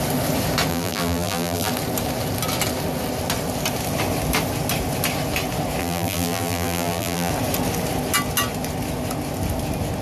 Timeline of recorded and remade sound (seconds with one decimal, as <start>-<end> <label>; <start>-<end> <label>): 0.0-0.7 recorded; 0.7-1.7 remade; 1.7-5.8 recorded; 5.8-7.3 remade; 7.3-10.0 recorded